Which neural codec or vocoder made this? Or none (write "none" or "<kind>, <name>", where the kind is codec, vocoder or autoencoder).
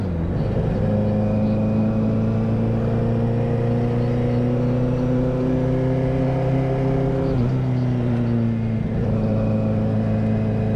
none